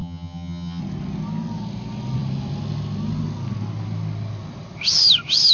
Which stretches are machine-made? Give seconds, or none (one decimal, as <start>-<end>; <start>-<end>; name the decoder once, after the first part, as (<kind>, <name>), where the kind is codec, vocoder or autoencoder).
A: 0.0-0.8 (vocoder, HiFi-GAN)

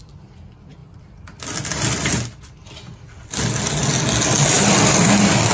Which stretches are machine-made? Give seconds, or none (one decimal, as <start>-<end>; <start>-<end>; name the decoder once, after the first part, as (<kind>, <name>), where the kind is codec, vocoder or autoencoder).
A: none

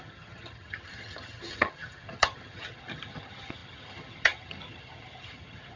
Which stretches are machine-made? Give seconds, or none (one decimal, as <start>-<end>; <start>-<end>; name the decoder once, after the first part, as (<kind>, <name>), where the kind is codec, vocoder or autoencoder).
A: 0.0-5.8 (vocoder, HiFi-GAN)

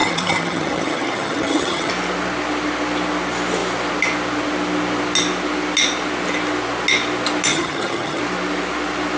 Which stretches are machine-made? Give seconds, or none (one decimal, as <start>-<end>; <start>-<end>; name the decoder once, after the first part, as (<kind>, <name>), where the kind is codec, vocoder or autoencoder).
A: 0.0-1.9 (vocoder, HiFi-GAN); 7.5-8.2

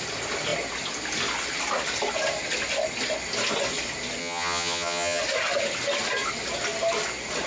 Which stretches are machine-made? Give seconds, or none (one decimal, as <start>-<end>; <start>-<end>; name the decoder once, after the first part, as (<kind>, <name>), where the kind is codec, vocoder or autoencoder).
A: 4.2-5.2 (vocoder, HiFi-GAN)

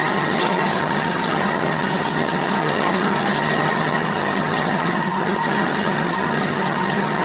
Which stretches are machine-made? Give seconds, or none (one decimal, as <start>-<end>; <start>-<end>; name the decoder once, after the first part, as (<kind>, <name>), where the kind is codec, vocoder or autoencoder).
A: 0.0-7.2 (vocoder, HiFi-GAN)

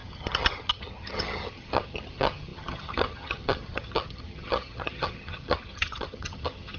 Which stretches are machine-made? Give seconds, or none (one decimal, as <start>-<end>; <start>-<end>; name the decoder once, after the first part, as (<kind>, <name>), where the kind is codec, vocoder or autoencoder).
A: 0.0-6.8 (vocoder, HiFi-GAN)